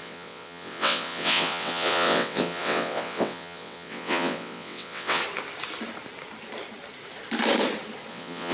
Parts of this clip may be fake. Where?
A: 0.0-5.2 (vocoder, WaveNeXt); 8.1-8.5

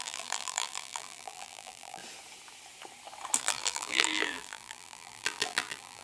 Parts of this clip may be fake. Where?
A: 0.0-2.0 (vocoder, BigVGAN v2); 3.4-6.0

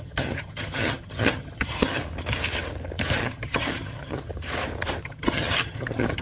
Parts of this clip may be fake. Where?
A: 0.0-2.0 (vocoder, HiFi-GAN); 3.2-4.3; 5.0-6.2